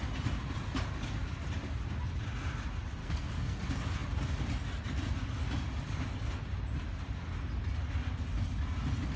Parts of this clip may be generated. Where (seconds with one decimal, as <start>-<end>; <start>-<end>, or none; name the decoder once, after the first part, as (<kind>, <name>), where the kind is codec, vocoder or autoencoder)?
3.0-3.6 (codec, SNAC)